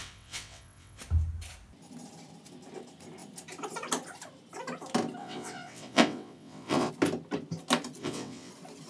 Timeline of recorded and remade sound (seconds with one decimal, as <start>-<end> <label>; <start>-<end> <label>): 0.0-1.0 remade; 1.0-5.2 recorded; 5.2-6.9 remade; 6.9-8.0 recorded; 8.0-8.5 remade; 8.5-8.9 recorded